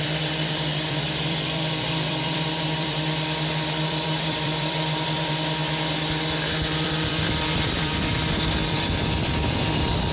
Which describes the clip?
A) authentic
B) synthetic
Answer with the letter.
B